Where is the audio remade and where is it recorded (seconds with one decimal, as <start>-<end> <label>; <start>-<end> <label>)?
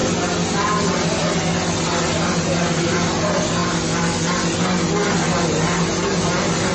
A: 0.0-6.7 recorded